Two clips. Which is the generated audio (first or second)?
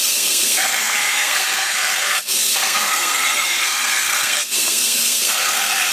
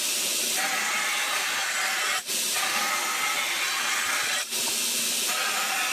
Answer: first